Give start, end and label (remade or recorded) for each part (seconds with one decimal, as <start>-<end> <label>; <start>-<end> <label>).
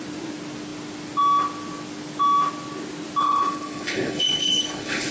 0.0-3.2 recorded; 3.2-5.1 remade